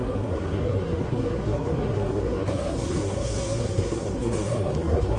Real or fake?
fake